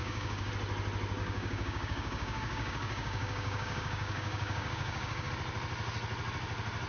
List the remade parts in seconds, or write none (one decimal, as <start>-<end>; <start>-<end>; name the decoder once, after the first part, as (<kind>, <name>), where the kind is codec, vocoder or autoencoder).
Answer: 0.0-0.5 (codec, DAC); 1.2-5.3